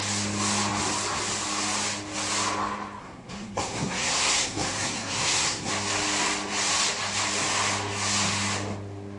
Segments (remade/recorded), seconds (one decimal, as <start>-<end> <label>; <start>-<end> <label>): 0.0-3.0 recorded; 3.0-5.7 remade; 5.7-9.2 recorded